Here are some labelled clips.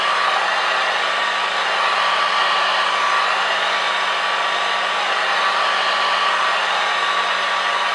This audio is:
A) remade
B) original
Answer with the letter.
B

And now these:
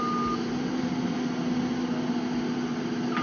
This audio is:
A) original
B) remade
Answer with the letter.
A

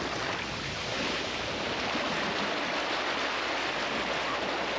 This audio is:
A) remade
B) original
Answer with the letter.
B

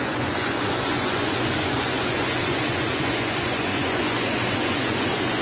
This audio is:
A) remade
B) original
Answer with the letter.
A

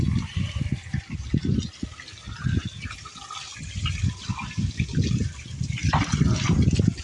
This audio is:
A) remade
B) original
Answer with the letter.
B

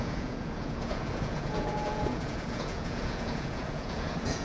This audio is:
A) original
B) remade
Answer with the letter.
B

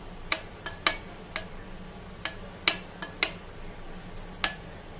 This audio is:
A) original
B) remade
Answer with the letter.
A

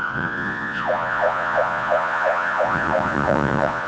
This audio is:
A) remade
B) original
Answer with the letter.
A